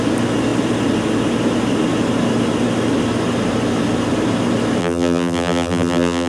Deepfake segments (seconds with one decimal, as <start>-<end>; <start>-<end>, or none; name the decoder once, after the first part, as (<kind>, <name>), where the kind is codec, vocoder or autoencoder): 4.8-6.3 (vocoder, BigVGAN v2)